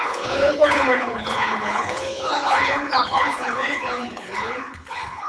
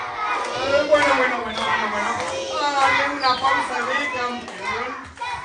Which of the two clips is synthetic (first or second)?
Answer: first